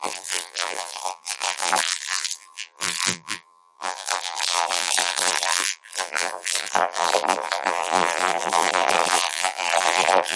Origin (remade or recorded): remade